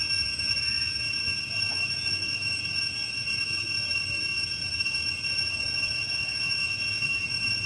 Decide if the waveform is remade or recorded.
remade